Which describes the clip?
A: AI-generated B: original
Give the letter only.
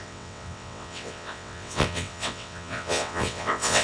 A